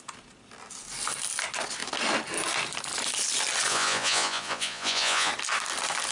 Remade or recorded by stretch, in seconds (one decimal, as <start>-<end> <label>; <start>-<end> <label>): 0.0-3.7 recorded; 3.7-5.3 remade; 5.3-6.1 recorded